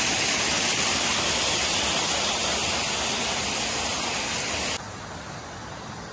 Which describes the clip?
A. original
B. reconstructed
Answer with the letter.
A